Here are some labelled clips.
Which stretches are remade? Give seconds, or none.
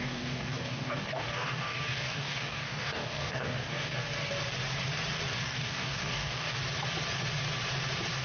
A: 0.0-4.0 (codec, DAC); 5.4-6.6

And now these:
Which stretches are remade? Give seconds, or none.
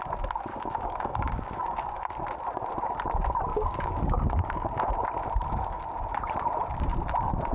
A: 0.5-1.9 (codec, DAC); 3.5-4.9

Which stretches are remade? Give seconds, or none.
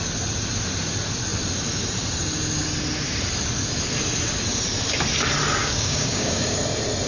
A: 5.6-6.6 (codec, DAC)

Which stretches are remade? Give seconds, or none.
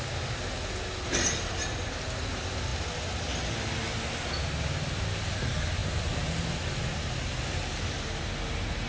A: none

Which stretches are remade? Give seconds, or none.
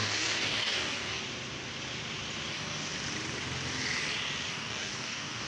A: 0.0-1.2 (codec, DAC); 2.5-2.9; 4.5-5.5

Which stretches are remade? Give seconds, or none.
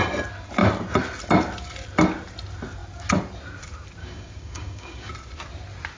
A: 4.0-5.1 (codec, DAC)